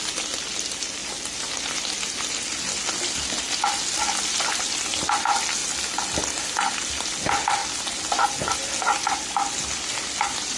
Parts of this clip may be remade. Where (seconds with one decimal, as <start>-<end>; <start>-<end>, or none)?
none